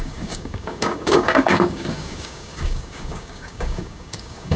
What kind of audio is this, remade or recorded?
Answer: remade